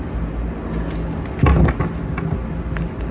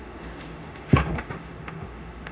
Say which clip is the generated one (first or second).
second